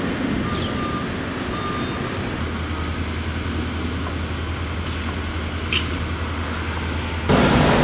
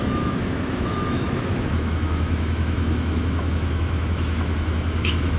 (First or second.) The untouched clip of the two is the first